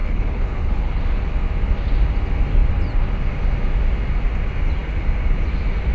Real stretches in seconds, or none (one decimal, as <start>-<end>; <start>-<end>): 1.0-5.9

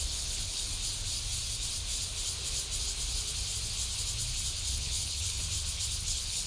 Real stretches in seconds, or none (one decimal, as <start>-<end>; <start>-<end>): 0.7-4.6; 5.4-6.0

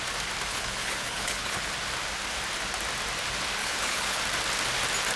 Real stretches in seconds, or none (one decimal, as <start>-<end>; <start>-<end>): 0.0-0.5; 1.7-3.6; 4.2-5.2